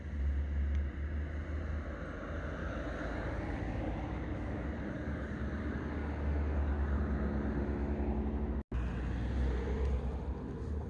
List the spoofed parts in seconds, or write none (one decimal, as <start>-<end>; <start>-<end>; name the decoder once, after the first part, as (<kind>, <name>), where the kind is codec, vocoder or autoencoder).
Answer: 2.6-7.0 (codec, DAC)